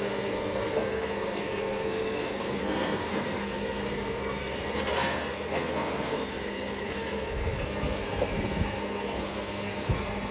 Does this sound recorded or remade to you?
remade